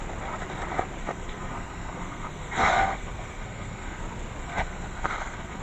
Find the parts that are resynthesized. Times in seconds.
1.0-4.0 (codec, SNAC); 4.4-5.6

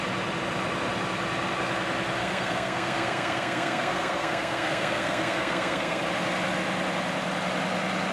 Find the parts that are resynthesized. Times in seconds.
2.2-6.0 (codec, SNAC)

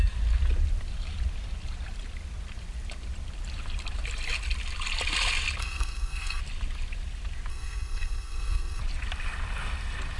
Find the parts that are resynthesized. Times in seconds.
5.6-6.4 (codec, SNAC); 7.5-8.8

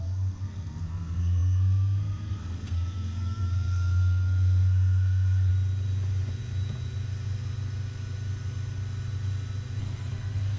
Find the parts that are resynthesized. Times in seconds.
0.0-5.5 (codec, SNAC); 9.8-10.6

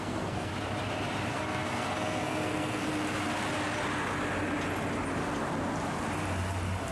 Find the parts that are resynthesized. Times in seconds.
0.0-0.5 (codec, SNAC); 1.3-2.9